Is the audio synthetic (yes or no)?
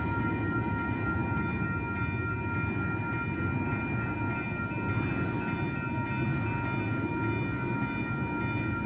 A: no